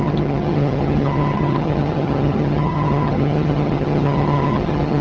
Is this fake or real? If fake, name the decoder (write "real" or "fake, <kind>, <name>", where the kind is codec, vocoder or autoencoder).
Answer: fake, vocoder, HiFi-GAN